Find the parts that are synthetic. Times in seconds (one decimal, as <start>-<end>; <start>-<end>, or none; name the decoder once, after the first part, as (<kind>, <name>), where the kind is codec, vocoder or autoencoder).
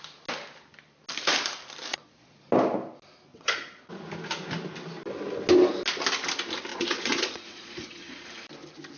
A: 1.9-2.5 (vocoder, Vocos); 3.3-3.9; 6.7-8.3